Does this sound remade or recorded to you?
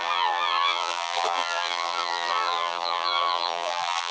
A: remade